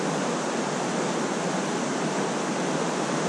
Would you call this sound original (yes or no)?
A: yes